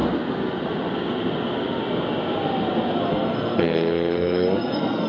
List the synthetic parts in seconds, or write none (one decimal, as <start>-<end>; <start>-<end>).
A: 3.1-5.1